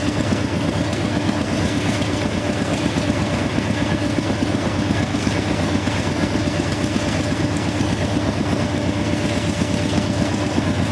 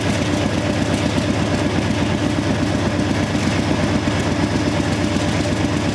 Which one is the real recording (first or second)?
second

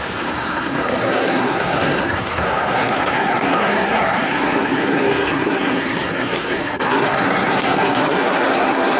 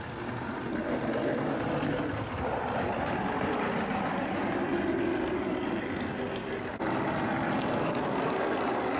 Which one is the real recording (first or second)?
second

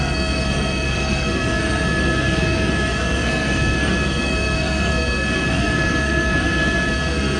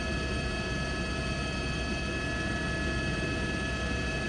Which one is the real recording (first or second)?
second